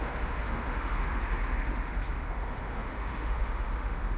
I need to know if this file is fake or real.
fake